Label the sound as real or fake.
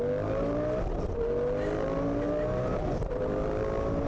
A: real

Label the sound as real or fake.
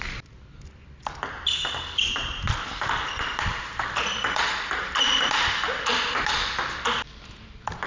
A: real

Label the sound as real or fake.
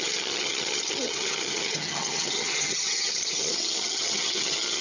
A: fake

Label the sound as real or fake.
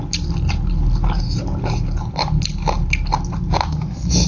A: real